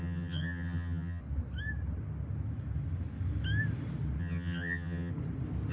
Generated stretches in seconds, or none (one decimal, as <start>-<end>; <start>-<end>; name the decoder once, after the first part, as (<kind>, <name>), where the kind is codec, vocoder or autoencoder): 0.0-1.2 (vocoder, HiFi-GAN); 4.2-5.1